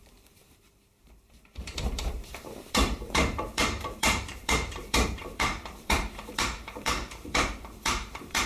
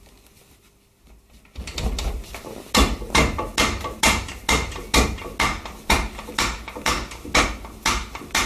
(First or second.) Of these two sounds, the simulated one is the first